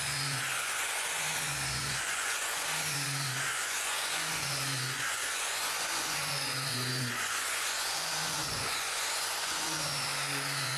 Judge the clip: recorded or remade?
remade